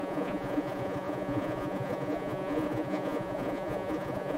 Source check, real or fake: fake